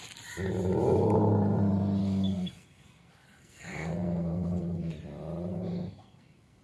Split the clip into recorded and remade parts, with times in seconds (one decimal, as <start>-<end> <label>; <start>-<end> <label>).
0.0-2.0 recorded; 2.0-4.9 remade; 4.9-5.5 recorded; 5.5-6.6 remade